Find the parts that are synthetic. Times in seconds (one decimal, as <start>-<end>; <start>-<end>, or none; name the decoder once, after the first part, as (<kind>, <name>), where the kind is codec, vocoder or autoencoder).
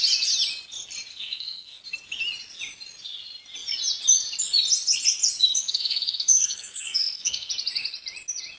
1.1-1.8 (codec, SNAC); 5.4-7.5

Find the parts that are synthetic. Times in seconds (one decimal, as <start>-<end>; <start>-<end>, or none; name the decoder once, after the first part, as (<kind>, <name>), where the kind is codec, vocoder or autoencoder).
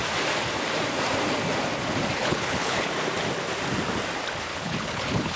2.2-2.9 (codec, HILCodec); 4.5-5.4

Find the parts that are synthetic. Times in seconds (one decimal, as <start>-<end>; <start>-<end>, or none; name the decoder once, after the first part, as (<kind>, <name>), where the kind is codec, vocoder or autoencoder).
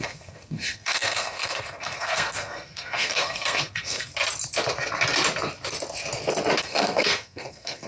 0.0-4.1 (codec, SNAC); 6.6-7.9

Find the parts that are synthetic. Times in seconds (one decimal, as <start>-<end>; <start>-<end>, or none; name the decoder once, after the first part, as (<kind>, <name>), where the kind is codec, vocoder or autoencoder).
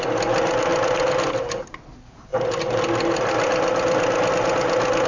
none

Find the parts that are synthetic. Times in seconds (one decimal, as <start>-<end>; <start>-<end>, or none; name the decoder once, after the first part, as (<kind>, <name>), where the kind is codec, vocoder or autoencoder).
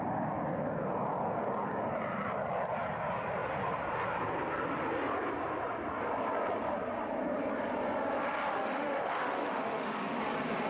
8.5-10.2 (autoencoder, DAC-VAE)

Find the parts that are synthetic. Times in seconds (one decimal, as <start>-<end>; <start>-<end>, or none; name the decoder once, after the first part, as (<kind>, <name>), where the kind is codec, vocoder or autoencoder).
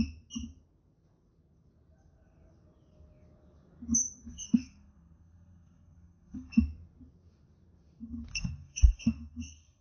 4.3-6.6 (codec, SNAC); 8.3-9.8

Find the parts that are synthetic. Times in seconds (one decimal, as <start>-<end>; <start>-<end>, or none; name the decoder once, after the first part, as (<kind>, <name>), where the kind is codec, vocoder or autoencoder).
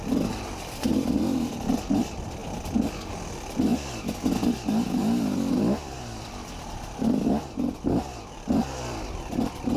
0.0-2.4 (vocoder, BigVGAN v2); 3.1-3.7; 5.2-9.8